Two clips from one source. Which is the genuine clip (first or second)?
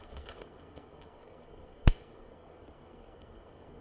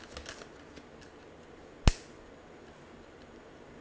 second